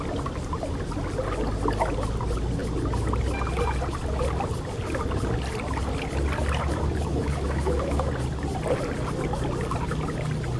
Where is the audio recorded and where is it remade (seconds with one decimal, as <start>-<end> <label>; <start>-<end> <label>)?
0.0-7.1 recorded; 7.1-8.1 remade; 8.1-10.6 recorded